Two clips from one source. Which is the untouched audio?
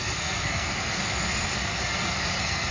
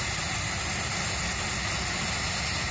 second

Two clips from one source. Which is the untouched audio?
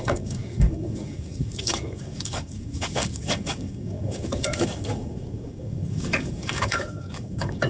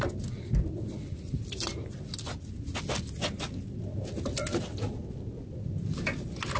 second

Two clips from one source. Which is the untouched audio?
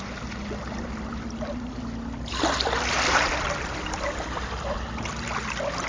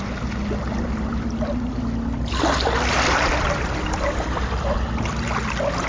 second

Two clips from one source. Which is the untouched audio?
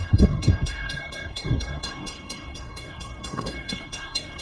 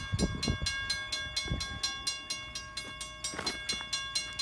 second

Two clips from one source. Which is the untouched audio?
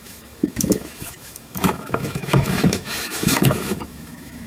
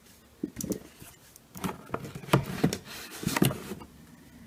second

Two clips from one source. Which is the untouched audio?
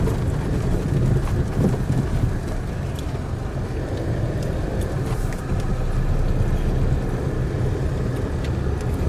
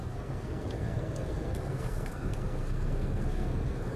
first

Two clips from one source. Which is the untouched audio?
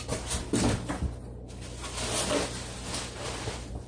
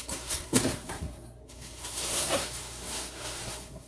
first